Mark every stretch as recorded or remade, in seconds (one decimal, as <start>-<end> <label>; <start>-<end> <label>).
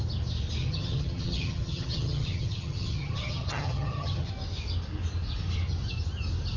0.0-0.6 recorded; 0.6-4.3 remade; 4.3-6.6 recorded